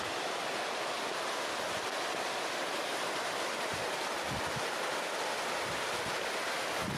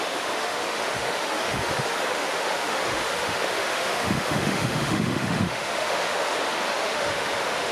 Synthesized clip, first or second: second